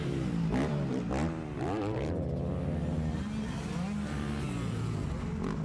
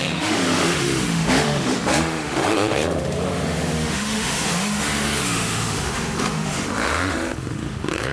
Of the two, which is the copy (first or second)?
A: second